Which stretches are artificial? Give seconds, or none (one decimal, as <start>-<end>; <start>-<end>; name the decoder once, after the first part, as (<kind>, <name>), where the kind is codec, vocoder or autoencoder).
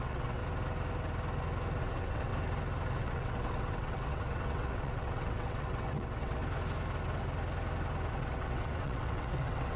0.0-0.4 (vocoder, WaveNeXt); 1.8-2.3; 3.0-6.4; 8.1-9.8